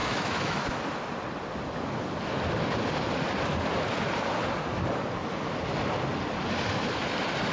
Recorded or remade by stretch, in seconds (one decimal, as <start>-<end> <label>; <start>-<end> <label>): 0.0-0.7 remade; 0.7-7.5 recorded